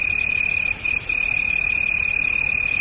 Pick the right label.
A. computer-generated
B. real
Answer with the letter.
B